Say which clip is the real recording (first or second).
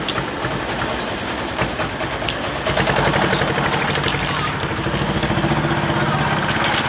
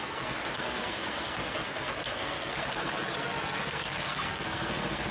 first